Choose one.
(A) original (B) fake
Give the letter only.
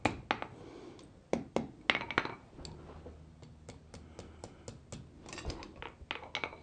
A